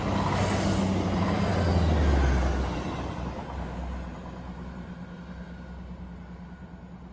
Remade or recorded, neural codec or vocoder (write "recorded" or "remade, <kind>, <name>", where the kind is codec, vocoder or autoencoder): recorded